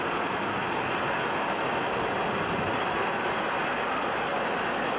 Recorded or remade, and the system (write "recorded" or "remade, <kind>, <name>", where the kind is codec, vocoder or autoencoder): recorded